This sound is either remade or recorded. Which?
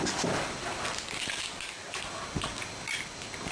recorded